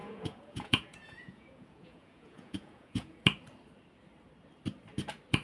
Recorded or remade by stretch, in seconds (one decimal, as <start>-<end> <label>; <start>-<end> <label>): 0.0-3.2 remade; 3.2-5.4 recorded